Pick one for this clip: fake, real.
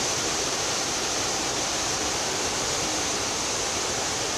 real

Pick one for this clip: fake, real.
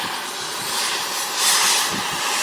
real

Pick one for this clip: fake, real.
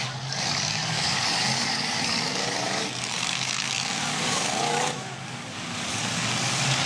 fake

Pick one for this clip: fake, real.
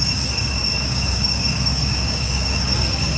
fake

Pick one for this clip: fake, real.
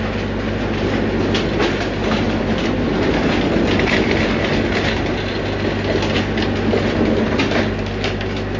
real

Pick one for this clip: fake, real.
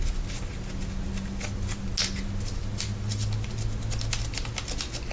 real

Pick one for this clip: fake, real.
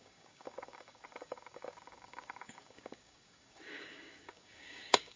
fake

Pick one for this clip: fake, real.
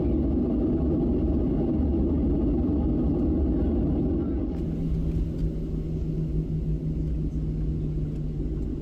real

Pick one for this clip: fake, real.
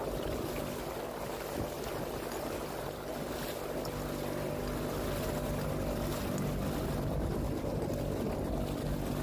real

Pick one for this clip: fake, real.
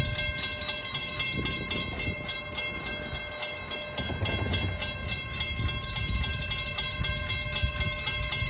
real